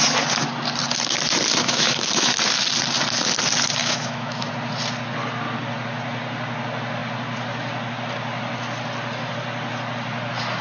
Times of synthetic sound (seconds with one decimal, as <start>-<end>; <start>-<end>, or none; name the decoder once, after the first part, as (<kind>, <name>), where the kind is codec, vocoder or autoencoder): 1.6-2.3 (autoencoder, DAC-VAE); 3.8-4.5